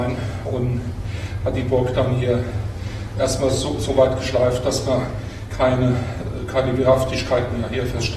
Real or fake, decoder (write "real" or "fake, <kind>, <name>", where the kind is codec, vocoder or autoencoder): real